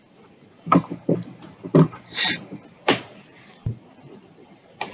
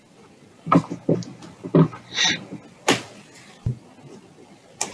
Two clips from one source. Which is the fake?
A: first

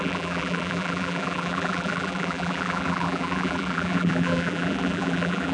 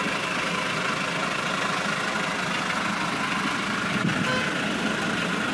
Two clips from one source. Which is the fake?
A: first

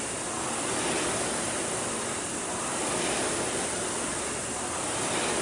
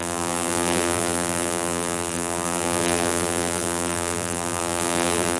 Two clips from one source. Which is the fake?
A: second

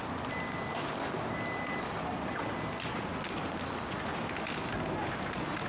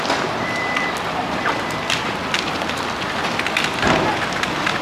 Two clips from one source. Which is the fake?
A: second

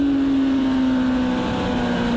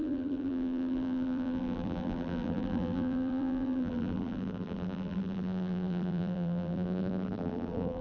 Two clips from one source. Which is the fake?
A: second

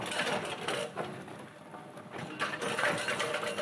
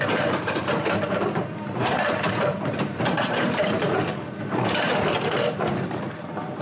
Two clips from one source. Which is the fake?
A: second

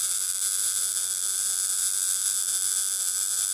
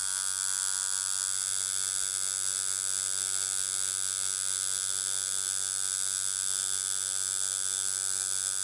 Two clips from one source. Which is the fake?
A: first